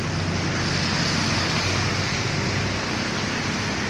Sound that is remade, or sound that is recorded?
recorded